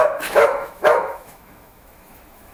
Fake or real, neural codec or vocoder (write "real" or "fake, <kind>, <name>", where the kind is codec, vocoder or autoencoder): fake, autoencoder, DAC-VAE